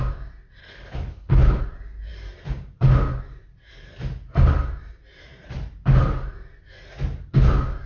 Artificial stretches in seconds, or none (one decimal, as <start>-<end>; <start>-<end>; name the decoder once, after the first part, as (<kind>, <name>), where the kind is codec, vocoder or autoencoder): 0.6-1.6 (codec, HILCodec)